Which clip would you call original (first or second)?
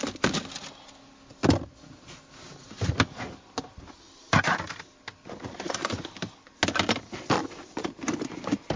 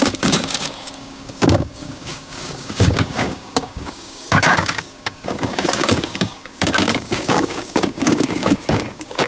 first